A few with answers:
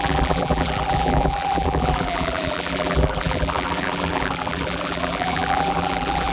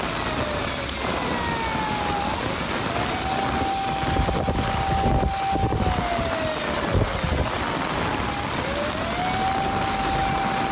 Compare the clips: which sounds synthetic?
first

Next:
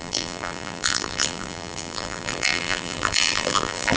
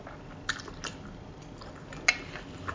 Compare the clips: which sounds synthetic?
first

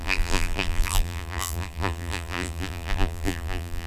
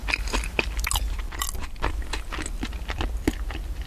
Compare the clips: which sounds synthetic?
first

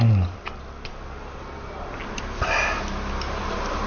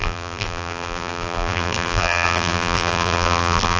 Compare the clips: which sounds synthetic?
second